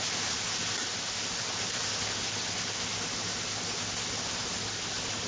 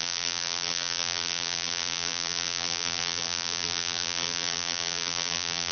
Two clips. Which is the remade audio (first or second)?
second